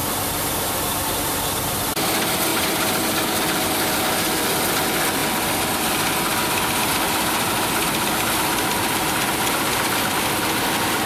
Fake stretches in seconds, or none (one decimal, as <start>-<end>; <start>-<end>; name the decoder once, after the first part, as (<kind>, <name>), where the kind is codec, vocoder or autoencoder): 2.5-3.0 (vocoder, BigVGAN v2)